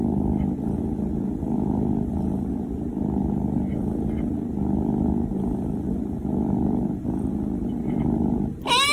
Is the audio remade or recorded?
recorded